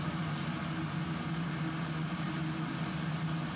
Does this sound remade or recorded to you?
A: recorded